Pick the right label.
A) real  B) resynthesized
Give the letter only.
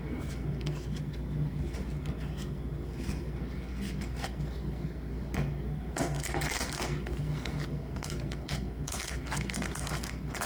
B